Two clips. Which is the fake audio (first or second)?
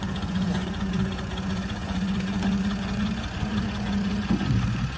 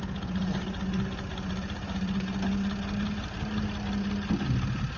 first